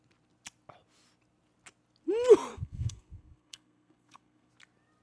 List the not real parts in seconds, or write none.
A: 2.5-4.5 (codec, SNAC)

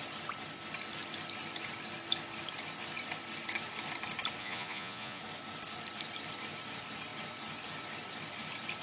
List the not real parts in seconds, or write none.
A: 4.4-5.2 (vocoder, Vocos)

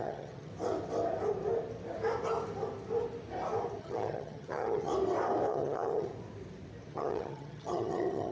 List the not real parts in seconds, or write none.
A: 0.0-0.5 (vocoder, HiFi-GAN); 3.8-4.9; 5.5-6.1; 6.9-8.3

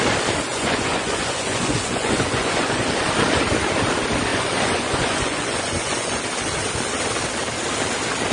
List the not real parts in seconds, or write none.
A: 0.5-2.9 (vocoder, Vocos); 4.3-6.2

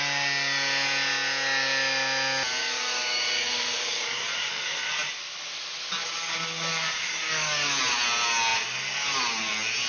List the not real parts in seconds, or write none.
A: 2.6-4.9 (codec, DAC); 6.0-7.8

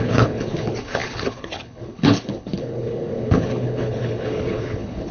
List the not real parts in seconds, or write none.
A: 0.0-5.1 (codec, HILCodec)